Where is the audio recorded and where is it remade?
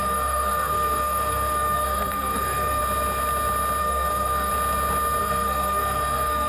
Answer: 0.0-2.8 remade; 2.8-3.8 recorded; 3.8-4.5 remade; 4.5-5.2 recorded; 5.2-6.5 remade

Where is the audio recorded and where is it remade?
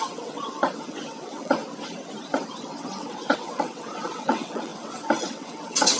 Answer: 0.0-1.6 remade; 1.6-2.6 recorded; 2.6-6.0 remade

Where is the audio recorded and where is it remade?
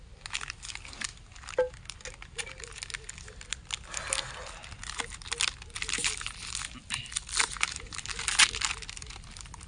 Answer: 0.0-9.7 recorded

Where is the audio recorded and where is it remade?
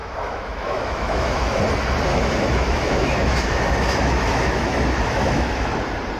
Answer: 0.0-1.6 remade; 1.6-2.1 recorded; 2.1-5.8 remade; 5.8-6.2 recorded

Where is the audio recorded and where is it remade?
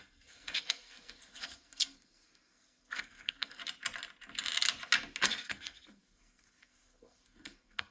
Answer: 0.0-3.6 remade; 3.6-5.2 recorded; 5.2-7.9 remade